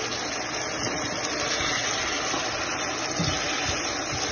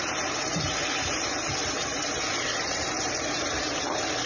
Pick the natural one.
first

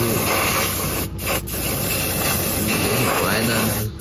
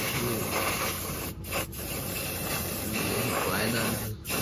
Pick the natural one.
first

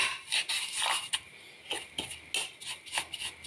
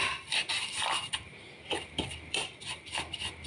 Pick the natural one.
first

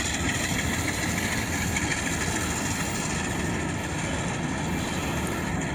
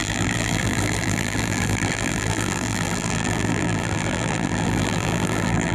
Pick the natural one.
first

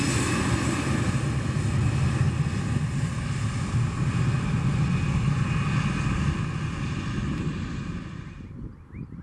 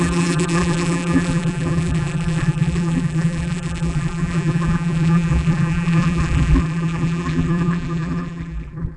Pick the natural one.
first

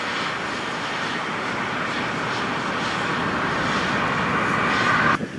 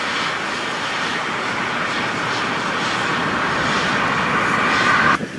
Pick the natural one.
first